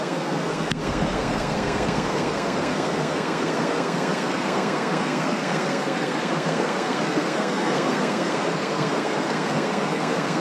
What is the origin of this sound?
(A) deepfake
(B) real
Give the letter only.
A